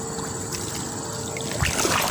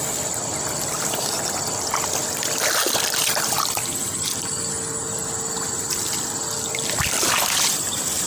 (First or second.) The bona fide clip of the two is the first